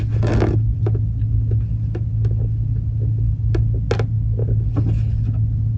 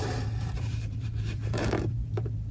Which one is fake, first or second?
second